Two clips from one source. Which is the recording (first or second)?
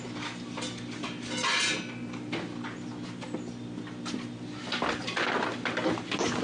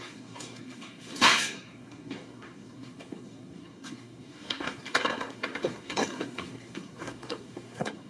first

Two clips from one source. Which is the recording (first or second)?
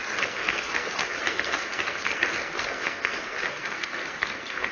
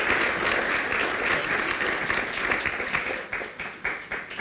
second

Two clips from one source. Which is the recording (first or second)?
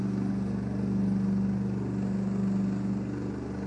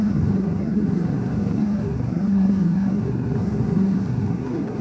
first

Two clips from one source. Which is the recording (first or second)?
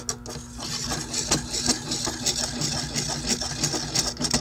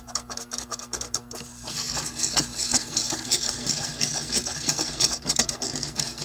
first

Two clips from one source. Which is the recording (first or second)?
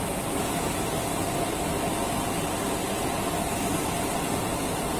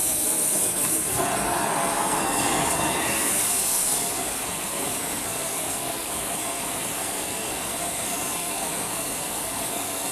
first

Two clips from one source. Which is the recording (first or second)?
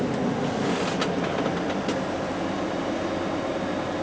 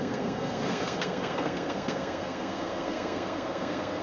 first